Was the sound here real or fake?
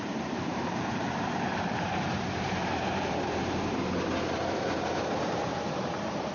fake